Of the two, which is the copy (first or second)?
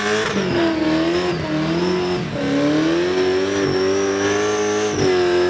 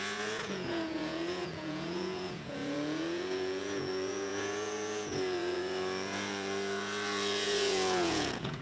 second